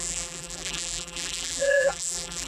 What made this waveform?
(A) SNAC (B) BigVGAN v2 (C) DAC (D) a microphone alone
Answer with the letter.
B